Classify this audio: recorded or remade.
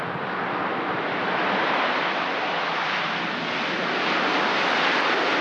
recorded